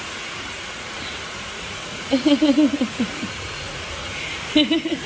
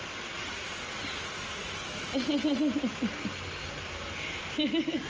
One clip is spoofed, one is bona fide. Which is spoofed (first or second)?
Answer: first